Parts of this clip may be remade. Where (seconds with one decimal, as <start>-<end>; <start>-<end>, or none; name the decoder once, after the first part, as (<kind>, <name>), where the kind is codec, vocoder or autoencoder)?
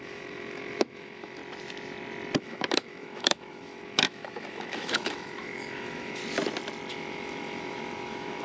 0.0-1.4 (autoencoder, DAC-VAE); 2.4-6.2; 6.9-8.4